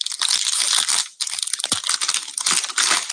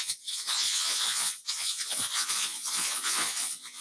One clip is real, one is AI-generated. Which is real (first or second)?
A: first